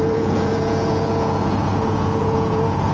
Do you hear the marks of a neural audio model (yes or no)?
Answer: yes